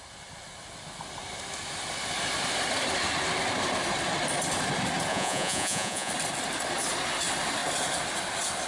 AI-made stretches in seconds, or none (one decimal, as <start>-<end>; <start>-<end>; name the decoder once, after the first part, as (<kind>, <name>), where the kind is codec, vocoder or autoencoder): 5.1-6.1 (vocoder, Vocos)